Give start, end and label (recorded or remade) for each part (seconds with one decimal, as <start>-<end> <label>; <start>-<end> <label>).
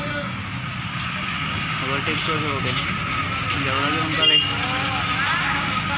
0.0-0.4 remade; 0.4-0.9 recorded; 0.9-1.8 remade; 1.8-5.4 recorded; 5.4-6.0 remade